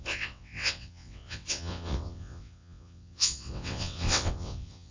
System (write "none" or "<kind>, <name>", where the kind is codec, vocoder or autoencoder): vocoder, WaveNeXt